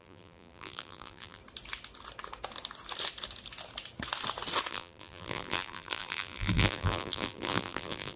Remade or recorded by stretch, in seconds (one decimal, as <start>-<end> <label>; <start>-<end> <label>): 0.0-1.4 remade; 1.4-4.7 recorded; 4.7-8.2 remade